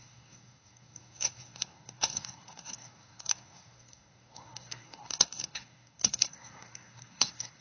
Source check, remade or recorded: remade